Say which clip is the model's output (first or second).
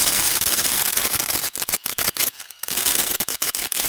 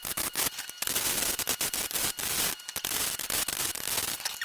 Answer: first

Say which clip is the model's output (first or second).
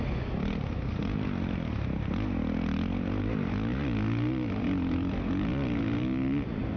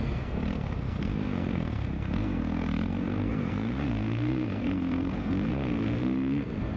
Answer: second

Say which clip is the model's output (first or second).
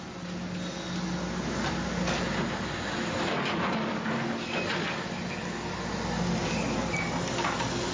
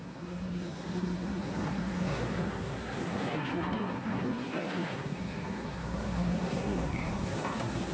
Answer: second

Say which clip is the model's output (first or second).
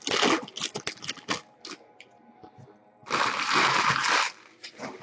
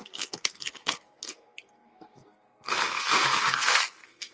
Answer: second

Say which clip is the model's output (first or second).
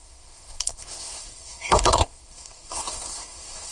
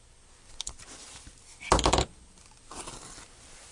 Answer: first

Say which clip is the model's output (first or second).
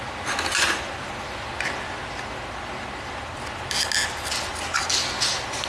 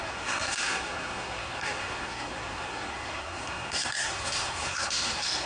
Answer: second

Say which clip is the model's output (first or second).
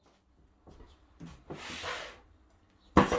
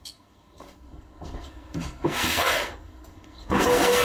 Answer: second